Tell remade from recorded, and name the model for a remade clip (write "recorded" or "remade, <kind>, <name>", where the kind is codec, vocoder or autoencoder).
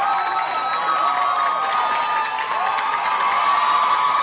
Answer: recorded